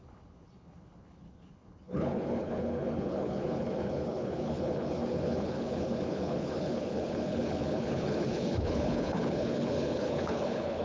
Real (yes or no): no